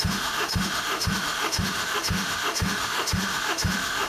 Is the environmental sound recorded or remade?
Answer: remade